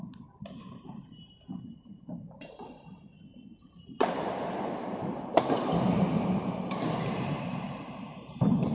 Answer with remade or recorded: remade